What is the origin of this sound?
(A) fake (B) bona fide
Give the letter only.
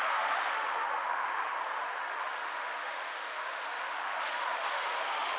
A